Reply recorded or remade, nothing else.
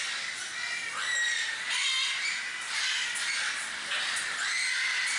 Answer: recorded